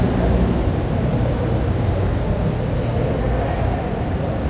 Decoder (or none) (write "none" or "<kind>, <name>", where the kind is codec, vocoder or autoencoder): none